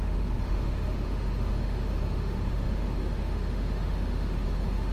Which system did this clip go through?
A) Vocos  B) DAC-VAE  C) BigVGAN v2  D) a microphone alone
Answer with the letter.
B